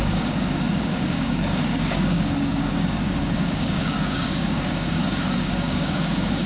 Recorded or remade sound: remade